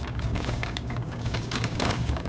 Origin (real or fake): fake